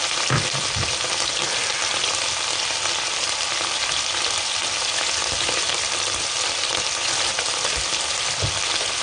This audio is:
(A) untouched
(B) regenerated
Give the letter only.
A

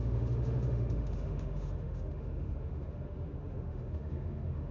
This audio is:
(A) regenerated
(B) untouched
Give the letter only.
A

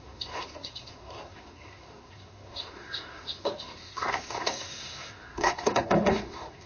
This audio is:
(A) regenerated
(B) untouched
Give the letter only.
A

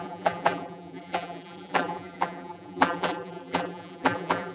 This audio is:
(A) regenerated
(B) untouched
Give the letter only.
A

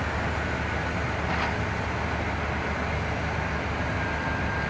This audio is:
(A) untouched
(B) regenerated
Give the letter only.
A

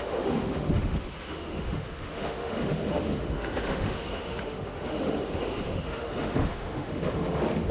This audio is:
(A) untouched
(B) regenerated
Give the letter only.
B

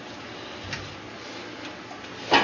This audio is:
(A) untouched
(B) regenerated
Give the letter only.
A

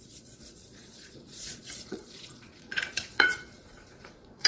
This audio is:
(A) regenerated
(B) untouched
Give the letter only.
A